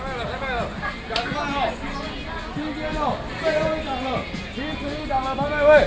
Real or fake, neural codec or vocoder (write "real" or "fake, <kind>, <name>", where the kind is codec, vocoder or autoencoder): real